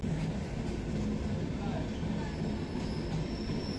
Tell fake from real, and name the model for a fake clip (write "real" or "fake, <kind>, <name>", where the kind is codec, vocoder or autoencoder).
real